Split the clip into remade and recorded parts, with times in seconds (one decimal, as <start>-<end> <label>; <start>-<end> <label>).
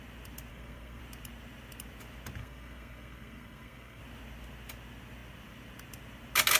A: 0.0-0.5 recorded; 0.5-1.0 remade; 1.0-2.4 recorded; 2.4-4.0 remade; 4.0-6.6 recorded